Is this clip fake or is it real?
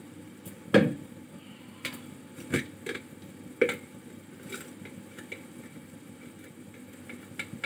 real